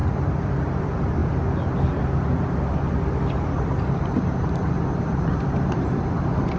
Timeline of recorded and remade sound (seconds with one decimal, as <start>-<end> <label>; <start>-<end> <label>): 0.0-1.2 remade; 1.2-5.2 recorded; 5.2-6.6 remade